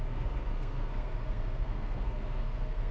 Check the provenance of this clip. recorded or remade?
remade